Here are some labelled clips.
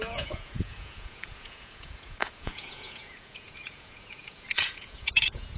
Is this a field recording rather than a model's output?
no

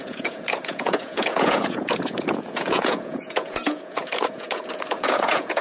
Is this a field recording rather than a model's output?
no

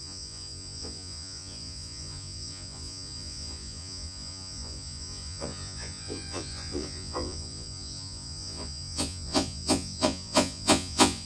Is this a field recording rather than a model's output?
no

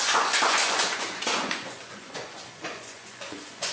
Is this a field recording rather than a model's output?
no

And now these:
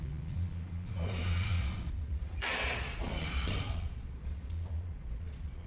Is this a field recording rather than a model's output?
no